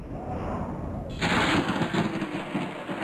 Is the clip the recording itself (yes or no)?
yes